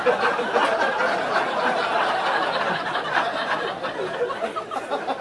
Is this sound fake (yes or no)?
no